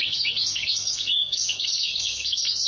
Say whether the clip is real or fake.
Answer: fake